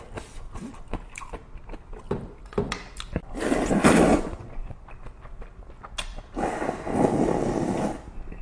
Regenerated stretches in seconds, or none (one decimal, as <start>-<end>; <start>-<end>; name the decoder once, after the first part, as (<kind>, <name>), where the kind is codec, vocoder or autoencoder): 4.1-4.9 (vocoder, Vocos)